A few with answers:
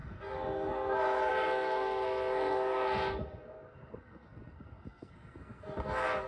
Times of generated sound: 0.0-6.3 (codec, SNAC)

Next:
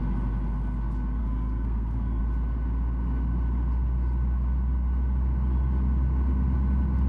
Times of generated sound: 1.2-2.2 (codec, SNAC)